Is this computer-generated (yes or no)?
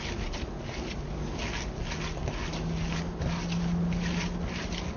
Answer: no